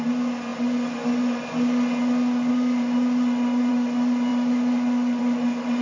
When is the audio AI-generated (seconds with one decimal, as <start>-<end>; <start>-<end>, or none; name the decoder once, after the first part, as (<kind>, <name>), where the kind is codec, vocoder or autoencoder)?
none